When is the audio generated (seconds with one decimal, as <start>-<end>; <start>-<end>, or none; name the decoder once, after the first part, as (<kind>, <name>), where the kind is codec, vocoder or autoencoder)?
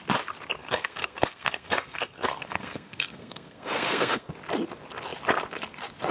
0.6-4.3 (codec, SNAC)